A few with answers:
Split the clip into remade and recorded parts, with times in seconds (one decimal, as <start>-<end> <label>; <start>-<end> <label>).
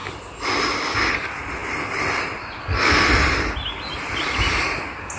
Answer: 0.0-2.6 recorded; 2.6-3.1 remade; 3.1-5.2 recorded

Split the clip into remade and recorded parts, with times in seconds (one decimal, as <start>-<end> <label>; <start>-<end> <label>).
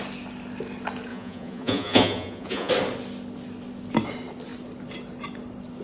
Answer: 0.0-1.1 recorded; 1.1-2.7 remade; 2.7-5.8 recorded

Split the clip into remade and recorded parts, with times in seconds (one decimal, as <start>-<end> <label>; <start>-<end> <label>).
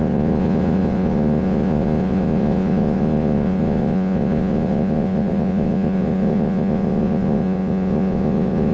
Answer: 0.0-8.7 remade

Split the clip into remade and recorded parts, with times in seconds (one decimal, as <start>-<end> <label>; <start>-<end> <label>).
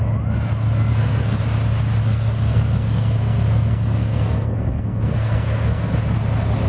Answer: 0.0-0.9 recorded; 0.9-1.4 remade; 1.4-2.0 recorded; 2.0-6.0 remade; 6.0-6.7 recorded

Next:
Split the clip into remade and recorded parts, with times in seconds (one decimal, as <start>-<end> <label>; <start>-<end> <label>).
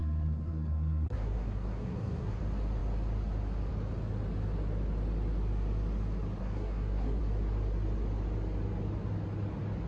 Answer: 0.0-2.4 remade; 2.4-6.4 recorded; 6.4-7.2 remade; 7.2-9.9 recorded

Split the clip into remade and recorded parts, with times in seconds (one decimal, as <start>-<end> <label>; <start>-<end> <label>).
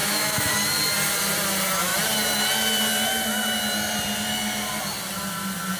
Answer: 0.0-0.5 remade; 0.5-5.8 recorded